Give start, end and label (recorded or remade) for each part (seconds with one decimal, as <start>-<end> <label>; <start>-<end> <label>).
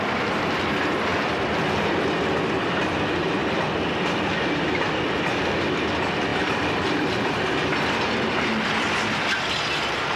0.0-10.2 recorded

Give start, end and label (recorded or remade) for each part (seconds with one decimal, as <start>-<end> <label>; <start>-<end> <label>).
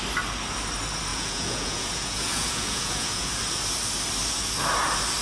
0.0-1.1 recorded; 1.1-3.3 remade; 3.3-5.2 recorded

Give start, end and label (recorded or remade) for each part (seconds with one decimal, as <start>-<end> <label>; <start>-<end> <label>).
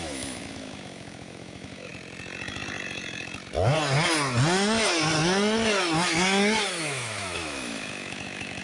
0.0-1.9 remade; 1.9-6.8 recorded; 6.8-8.6 remade